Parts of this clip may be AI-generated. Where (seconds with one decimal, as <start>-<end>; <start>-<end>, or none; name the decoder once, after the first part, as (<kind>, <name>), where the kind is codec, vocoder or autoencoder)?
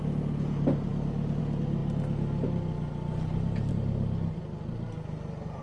none